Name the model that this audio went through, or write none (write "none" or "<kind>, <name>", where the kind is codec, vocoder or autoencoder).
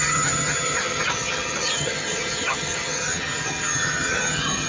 vocoder, HiFi-GAN